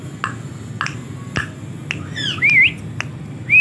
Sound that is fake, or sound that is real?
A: real